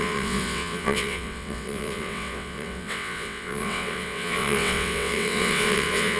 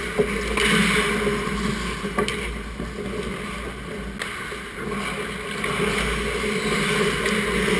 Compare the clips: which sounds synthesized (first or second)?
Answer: first